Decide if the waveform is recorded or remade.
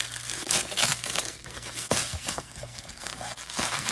remade